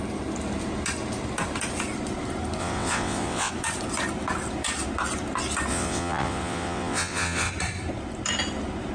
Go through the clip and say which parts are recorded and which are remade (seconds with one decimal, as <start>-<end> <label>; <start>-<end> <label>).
0.0-2.6 recorded; 2.6-3.5 remade; 3.5-5.7 recorded; 5.7-7.5 remade; 7.5-8.9 recorded